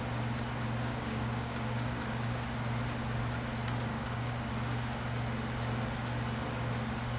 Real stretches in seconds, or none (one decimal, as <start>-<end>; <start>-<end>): 0.0-0.9; 2.3-3.9; 4.5-7.2